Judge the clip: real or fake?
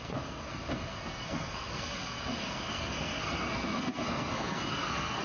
fake